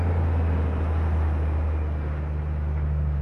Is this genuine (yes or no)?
yes